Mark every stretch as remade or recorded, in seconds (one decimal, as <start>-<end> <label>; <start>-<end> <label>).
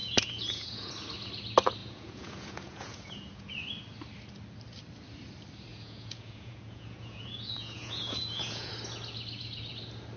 0.0-0.9 remade; 0.9-1.8 recorded; 1.8-3.5 remade; 3.5-5.7 recorded; 5.7-8.7 remade; 8.7-10.2 recorded